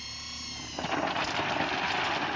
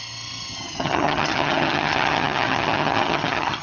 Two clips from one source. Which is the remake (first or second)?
second